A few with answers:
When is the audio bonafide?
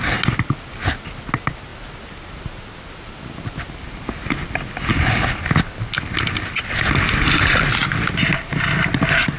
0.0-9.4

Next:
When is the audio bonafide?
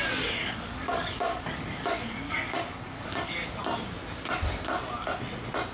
0.0-0.4; 3.6-5.7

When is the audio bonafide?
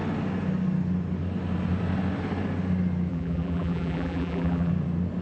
0.0-3.1; 4.7-5.2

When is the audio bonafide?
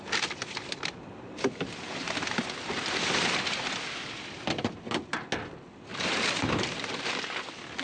0.0-0.4; 3.8-5.9; 7.1-7.8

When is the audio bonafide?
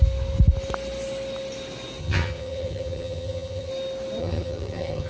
0.0-2.0; 3.7-4.2